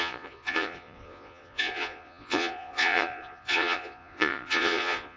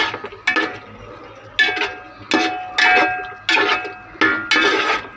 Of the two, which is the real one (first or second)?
second